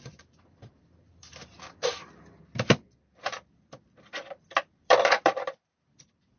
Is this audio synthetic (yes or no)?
yes